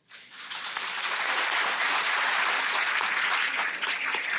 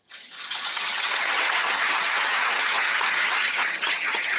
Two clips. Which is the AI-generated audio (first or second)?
second